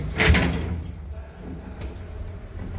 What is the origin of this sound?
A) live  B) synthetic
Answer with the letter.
A